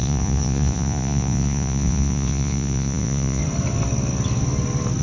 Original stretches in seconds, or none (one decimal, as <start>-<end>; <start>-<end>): 3.4-5.0